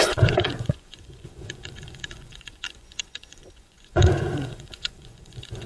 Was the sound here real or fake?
fake